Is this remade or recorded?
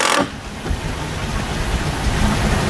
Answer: recorded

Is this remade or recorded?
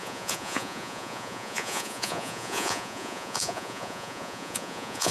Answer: remade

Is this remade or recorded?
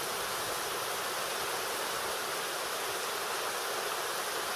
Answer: recorded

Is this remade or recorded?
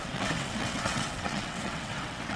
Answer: remade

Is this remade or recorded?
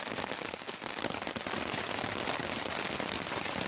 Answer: recorded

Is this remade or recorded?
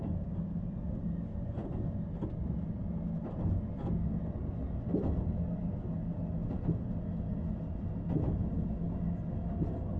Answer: recorded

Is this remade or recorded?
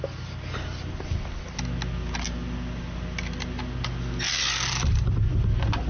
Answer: recorded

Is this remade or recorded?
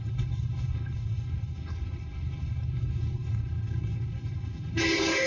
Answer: remade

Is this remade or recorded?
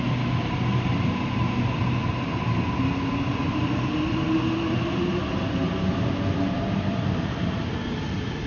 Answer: recorded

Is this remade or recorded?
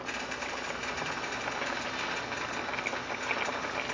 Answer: recorded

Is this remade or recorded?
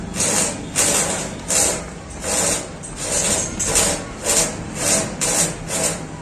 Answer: recorded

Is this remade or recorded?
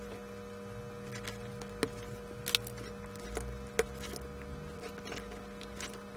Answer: recorded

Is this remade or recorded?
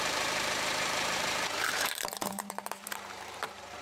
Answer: remade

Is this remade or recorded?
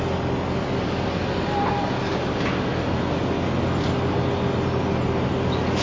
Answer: recorded